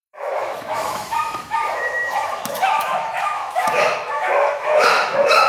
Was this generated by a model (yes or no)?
yes